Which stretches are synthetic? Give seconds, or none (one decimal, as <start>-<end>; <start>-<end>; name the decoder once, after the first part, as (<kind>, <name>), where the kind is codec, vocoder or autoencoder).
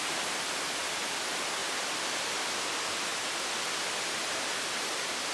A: 0.0-5.3 (vocoder, BigVGAN v2)